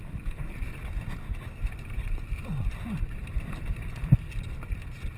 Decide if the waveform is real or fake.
real